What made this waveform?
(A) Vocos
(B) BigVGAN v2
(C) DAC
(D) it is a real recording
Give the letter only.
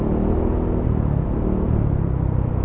D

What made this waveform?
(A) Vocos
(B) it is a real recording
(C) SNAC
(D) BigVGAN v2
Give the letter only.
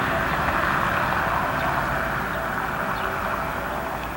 B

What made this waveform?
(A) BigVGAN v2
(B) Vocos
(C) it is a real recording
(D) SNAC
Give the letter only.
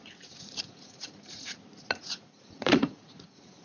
B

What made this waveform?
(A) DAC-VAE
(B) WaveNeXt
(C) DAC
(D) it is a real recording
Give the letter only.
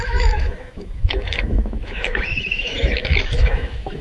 A